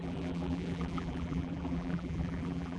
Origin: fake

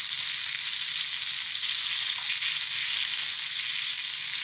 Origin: real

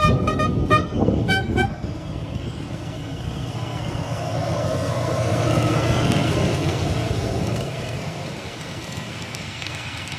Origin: fake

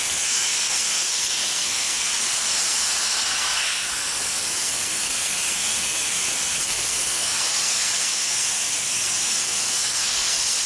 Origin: fake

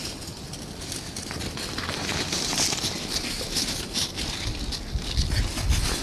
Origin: real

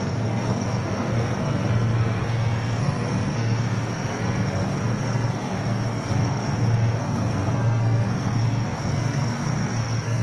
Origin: fake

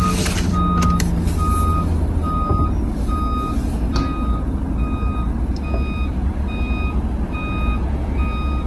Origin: real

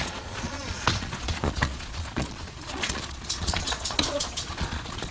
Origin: fake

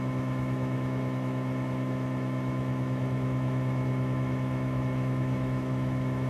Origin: fake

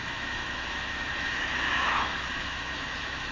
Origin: fake